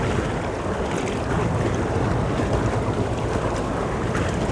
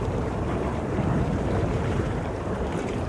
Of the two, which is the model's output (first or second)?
second